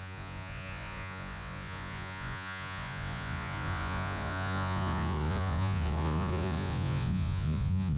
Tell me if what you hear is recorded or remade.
remade